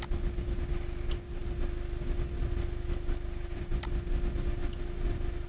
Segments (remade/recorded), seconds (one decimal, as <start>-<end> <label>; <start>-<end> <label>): 0.0-5.5 recorded